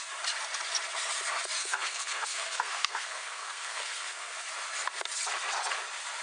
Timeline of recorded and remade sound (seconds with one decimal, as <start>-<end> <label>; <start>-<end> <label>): 0.0-1.6 recorded; 1.6-4.4 remade; 4.4-6.2 recorded